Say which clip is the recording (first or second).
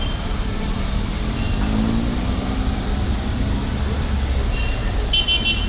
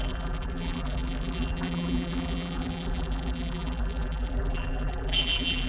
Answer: first